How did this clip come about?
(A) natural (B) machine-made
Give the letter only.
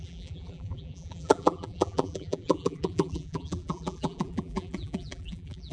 B